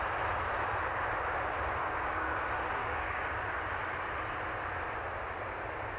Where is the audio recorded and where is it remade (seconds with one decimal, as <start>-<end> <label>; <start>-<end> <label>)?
0.0-1.8 recorded; 1.8-2.4 remade; 2.4-2.8 recorded; 2.8-3.4 remade; 3.4-6.0 recorded